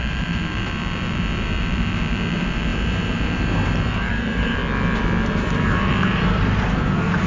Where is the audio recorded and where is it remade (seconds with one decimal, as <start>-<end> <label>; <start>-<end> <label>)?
0.0-4.6 remade; 4.6-5.3 recorded; 5.3-7.3 remade